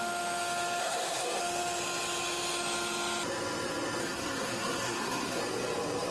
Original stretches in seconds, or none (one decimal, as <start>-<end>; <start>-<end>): 0.0-0.8; 1.4-4.0; 5.4-6.1